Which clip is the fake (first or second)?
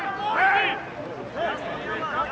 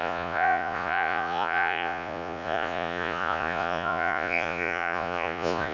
second